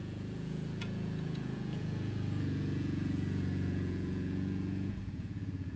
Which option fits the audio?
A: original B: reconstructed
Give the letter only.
B